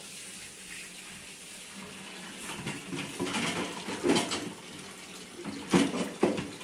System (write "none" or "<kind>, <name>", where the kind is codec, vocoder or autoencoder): none